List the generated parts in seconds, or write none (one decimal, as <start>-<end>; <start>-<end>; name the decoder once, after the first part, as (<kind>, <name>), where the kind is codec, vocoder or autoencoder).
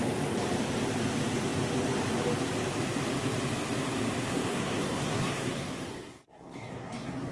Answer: 4.3-7.3 (codec, SNAC)